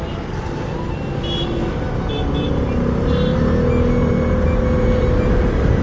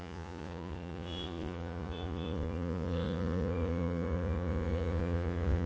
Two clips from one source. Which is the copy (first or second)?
second